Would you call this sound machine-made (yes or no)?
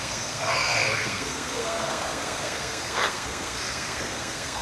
yes